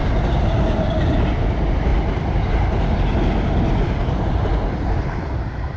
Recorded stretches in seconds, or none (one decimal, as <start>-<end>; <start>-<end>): 0.0-5.8